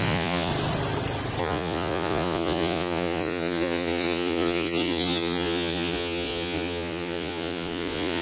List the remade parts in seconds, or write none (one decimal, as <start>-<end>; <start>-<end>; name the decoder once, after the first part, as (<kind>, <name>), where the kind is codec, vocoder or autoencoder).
0.0-0.5 (vocoder, Vocos); 1.4-8.2